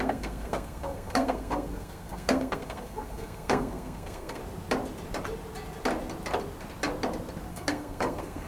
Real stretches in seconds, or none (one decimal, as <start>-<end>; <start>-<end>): 4.4-7.5